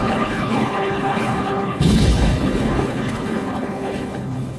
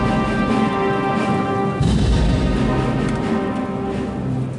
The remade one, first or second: first